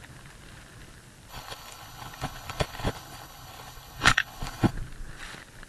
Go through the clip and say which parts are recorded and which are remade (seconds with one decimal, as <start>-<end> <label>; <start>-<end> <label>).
0.0-1.3 recorded; 1.3-4.7 remade; 4.7-5.7 recorded